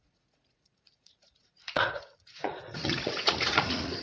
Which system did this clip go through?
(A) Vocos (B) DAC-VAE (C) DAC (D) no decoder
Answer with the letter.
A